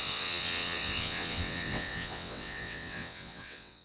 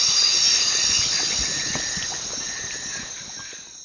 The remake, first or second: first